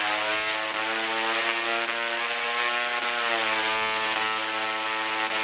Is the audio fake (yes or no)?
no